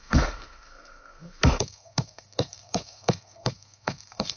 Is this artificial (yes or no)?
yes